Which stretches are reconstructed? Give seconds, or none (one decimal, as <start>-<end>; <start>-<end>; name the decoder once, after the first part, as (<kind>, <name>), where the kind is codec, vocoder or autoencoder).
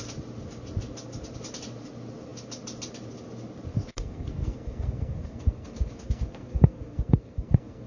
3.7-7.9 (codec, SNAC)